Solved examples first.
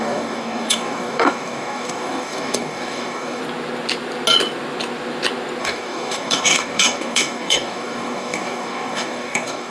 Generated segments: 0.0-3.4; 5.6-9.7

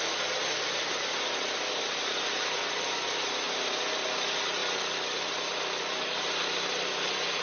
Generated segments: none

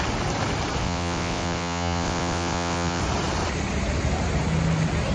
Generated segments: 0.8-3.0

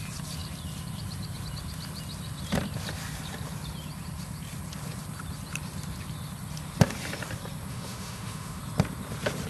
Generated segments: 7.7-8.6